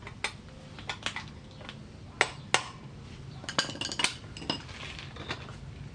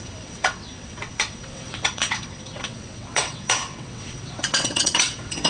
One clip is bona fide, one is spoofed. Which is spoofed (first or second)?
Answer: second